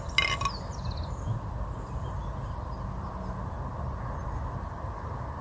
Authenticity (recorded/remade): recorded